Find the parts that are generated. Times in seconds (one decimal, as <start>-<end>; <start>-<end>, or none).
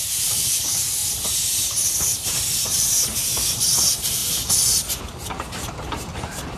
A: 0.0-1.0; 2.7-4.2; 5.0-6.6